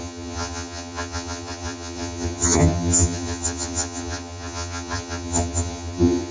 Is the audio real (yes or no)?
no